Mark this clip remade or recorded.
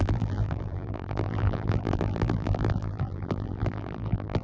remade